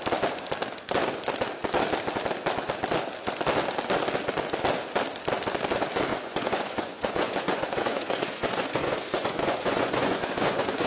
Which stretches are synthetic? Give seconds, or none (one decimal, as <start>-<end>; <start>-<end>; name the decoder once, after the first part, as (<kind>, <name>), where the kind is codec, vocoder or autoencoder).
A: 6.1-10.9 (vocoder, Vocos)